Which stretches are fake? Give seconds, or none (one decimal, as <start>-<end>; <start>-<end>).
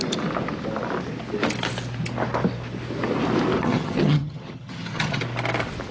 3.6-5.2